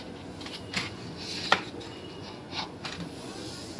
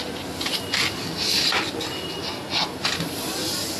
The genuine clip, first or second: second